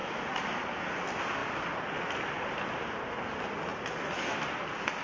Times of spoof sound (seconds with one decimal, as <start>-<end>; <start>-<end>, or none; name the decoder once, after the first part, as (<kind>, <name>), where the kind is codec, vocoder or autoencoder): none